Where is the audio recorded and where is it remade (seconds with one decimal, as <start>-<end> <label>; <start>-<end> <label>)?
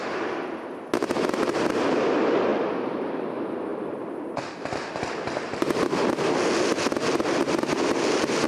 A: 0.0-8.5 recorded